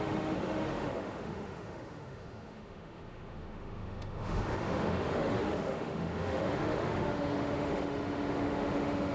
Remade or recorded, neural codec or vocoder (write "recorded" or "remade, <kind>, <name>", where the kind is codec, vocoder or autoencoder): remade, autoencoder, DAC-VAE